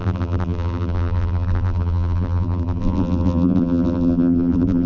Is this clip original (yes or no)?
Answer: no